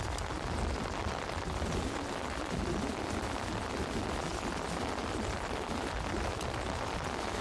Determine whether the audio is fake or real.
real